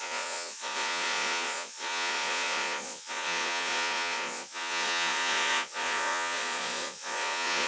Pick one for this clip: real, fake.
fake